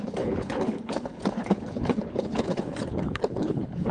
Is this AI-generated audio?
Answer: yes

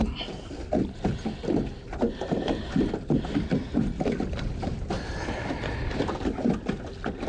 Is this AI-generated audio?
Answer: no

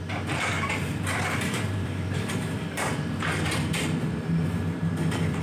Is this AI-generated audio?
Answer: yes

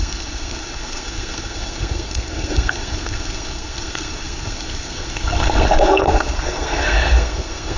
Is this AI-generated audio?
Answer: yes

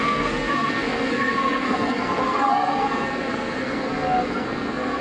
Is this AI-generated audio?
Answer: yes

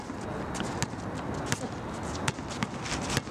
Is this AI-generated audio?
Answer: no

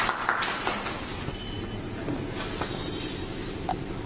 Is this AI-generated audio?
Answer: no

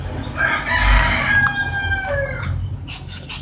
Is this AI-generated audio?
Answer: no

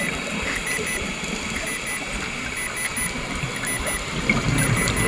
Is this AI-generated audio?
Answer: no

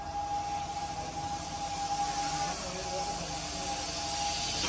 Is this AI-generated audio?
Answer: no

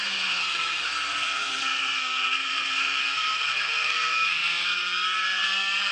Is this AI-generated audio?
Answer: yes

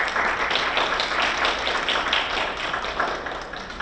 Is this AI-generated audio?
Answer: no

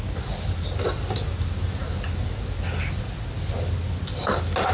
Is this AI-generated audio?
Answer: no